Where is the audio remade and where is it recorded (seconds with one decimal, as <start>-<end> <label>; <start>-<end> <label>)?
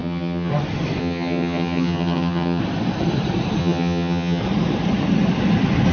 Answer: 0.0-0.5 remade; 0.5-1.0 recorded; 1.0-2.6 remade; 2.6-3.6 recorded; 3.6-4.4 remade; 4.4-5.9 recorded